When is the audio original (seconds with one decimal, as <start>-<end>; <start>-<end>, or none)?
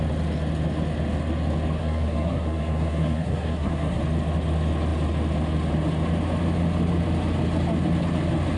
0.0-1.8; 4.0-8.6